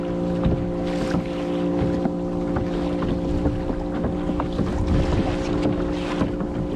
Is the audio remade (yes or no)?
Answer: no